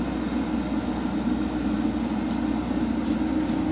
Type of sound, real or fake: real